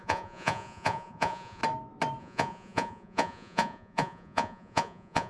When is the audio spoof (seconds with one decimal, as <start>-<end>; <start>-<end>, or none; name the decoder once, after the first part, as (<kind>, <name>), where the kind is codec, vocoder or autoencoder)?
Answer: 0.0-1.6 (vocoder, Vocos); 2.2-5.3